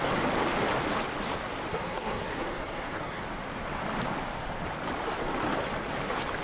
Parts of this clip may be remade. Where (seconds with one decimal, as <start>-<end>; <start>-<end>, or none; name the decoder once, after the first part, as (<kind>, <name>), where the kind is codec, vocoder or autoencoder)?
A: 1.7-3.2 (codec, SNAC)

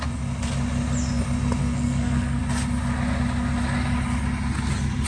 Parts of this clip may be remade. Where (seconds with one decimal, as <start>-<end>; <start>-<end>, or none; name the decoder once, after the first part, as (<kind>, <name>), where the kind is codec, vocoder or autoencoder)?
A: 1.6-2.4 (codec, SNAC)

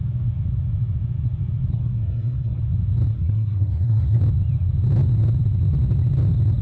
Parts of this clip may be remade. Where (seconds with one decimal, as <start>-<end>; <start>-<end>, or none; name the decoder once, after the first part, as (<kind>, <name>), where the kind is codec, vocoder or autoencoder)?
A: 1.7-2.6 (codec, SNAC); 3.1-4.2

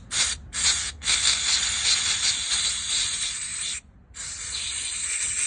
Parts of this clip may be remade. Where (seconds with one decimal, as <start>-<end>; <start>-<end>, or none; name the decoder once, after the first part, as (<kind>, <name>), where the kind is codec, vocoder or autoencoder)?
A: 0.8-1.4 (codec, SNAC)

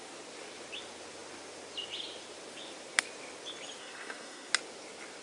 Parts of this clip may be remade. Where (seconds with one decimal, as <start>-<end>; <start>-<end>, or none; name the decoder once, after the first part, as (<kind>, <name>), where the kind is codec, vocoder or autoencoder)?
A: 3.8-4.5 (codec, SNAC)

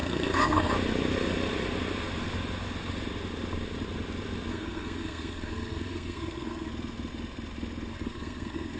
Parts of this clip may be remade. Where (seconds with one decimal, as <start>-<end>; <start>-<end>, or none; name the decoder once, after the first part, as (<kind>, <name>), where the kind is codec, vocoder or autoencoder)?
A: 0.0-0.7 (codec, SNAC); 4.5-6.7; 7.9-8.8